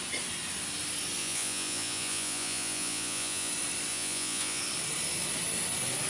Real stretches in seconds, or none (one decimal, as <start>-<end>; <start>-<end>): 0.0-1.2; 3.5-3.9; 4.6-6.1

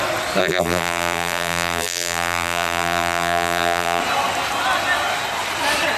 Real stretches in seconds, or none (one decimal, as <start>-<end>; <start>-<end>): 0.0-0.4; 4.0-6.0

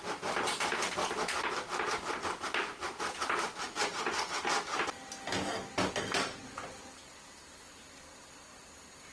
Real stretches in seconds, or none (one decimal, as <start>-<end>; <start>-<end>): 0.0-9.1

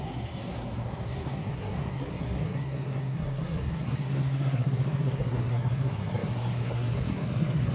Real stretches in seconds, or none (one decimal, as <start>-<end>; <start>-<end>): none

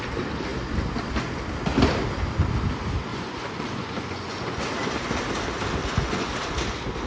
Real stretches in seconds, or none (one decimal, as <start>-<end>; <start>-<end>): 0.0-3.1; 4.6-5.8; 6.3-7.1

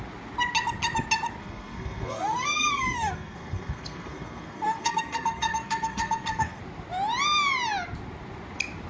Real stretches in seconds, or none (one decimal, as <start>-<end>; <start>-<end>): 0.0-1.4; 6.6-8.9

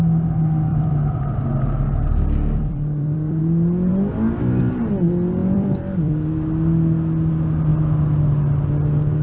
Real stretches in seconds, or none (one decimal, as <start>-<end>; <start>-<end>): 0.0-0.7; 3.4-5.4; 6.1-9.2